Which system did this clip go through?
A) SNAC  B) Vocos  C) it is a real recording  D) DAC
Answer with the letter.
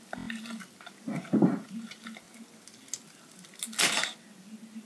C